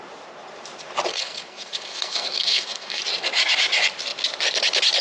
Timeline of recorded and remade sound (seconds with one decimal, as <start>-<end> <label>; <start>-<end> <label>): 0.0-1.1 recorded; 1.1-3.0 remade; 3.0-5.0 recorded